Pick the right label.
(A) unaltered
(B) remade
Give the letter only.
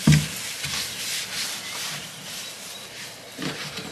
A